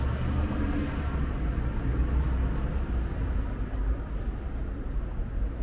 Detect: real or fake real